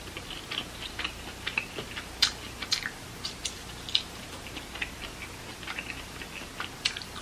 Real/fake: real